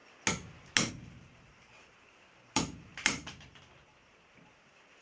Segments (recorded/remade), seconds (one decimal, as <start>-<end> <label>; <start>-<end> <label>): 0.0-0.9 recorded; 0.9-2.9 remade; 2.9-5.0 recorded